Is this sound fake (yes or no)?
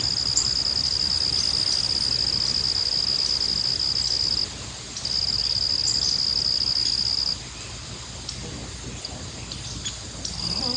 no